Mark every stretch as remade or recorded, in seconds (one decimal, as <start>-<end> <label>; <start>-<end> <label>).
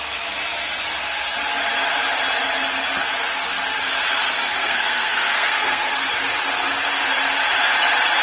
0.0-4.2 recorded; 4.2-6.1 remade; 6.1-8.2 recorded